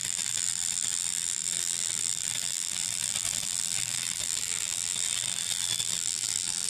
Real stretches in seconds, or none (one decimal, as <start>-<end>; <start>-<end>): none